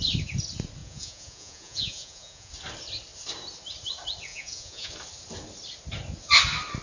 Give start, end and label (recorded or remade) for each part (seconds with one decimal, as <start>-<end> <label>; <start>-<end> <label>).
0.0-0.8 recorded; 0.8-2.5 remade; 2.5-4.3 recorded; 4.3-4.9 remade; 4.9-6.8 recorded